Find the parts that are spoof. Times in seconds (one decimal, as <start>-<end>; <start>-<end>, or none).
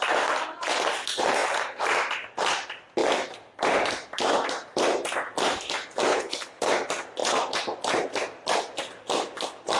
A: 6.1-6.7